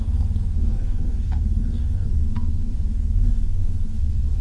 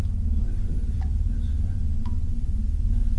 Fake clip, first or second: first